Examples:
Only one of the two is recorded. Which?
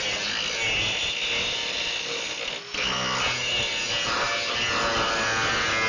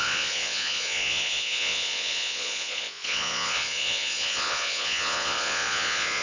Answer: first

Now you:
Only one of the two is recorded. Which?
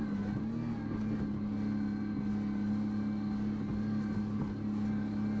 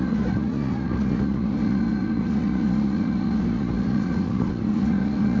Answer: first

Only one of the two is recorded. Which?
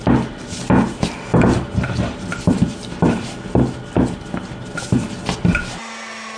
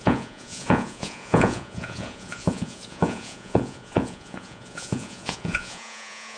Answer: first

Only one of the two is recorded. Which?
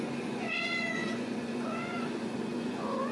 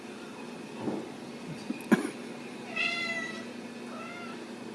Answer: second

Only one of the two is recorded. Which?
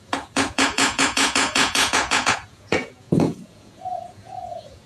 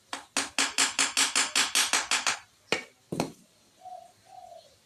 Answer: second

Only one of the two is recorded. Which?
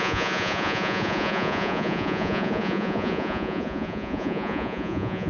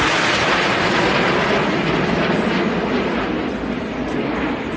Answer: second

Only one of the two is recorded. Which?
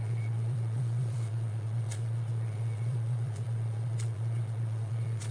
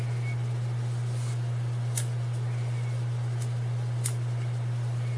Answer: second